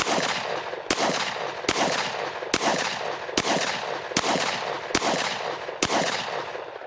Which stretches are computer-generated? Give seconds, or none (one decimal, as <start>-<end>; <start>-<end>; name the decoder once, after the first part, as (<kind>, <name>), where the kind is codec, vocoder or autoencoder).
none